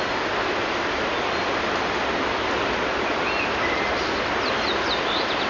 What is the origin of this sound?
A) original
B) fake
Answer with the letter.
A